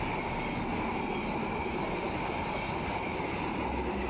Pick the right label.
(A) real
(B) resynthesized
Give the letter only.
A